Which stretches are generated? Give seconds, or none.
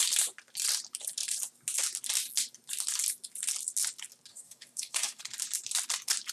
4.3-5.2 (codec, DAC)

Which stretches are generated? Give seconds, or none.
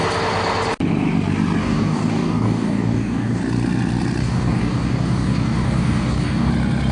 1.6-3.4 (codec, DAC); 4.2-6.5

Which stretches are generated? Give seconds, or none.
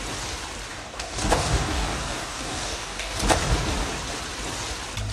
0.7-3.2 (codec, DAC)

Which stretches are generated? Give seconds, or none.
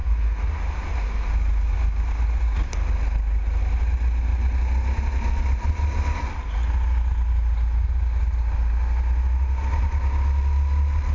none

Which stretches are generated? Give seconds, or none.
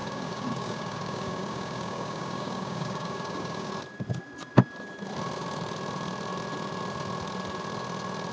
0.0-3.7 (codec, DAC)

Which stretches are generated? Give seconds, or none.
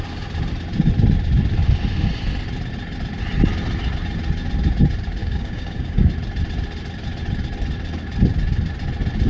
5.2-6.1 (codec, DAC)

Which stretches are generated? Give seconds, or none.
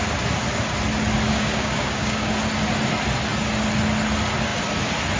1.3-2.3 (codec, DAC)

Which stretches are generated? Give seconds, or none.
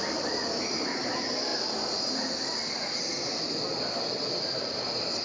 none